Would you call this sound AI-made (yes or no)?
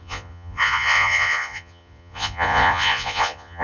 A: yes